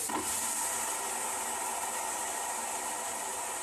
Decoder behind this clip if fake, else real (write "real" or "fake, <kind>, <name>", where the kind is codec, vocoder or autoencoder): real